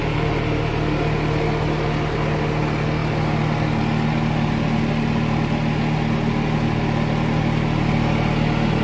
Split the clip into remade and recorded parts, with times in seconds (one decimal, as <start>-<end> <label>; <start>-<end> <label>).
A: 0.0-8.8 recorded

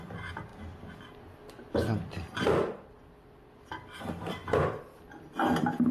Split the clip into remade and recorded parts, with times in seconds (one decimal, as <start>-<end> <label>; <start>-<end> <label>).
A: 0.0-5.9 recorded

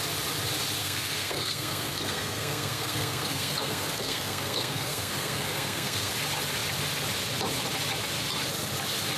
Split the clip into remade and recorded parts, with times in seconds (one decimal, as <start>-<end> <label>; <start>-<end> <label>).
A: 0.0-0.8 recorded; 0.8-6.1 remade; 6.1-9.2 recorded

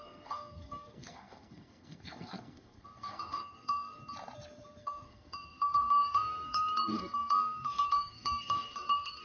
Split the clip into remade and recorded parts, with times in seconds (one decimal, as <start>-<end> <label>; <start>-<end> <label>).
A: 0.0-4.0 remade; 4.0-4.8 recorded; 4.8-9.2 remade